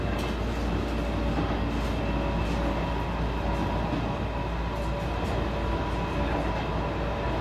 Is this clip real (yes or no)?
yes